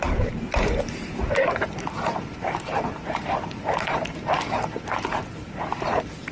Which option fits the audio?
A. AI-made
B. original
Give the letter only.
A